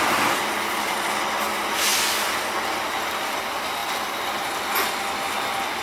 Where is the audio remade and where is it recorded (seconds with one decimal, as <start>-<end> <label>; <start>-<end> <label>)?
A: 0.0-5.8 recorded